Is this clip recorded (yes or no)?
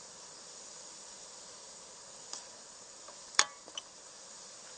no